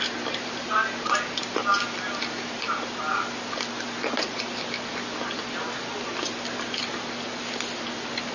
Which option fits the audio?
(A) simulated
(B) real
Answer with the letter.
B